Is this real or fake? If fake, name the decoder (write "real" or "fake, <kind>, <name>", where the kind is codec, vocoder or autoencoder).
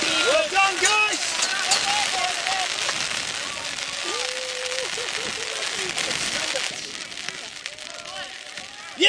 real